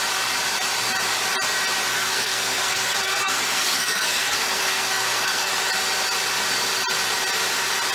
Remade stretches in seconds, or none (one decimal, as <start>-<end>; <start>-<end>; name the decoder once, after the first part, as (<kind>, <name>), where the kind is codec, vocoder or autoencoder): 1.9-5.5 (codec, SNAC)